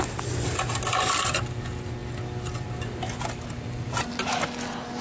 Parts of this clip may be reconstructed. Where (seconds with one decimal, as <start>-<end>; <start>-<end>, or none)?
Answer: none